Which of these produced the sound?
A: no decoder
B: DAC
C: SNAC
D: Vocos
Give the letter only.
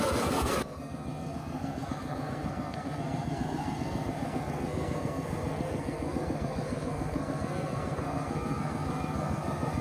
C